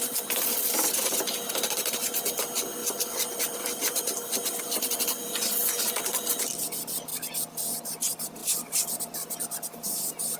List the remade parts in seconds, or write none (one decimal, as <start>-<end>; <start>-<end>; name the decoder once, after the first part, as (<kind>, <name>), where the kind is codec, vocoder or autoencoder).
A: 7.1-7.8 (vocoder, BigVGAN v2); 8.4-9.0